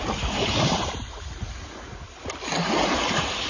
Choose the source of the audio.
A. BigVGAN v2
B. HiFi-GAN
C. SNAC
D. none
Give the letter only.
D